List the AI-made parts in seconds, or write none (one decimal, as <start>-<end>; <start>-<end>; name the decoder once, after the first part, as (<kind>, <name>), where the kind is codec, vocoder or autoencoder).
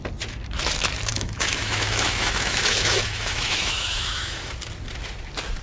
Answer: 1.1-4.5 (autoencoder, DAC-VAE)